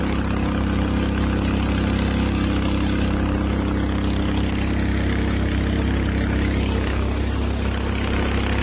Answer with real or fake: real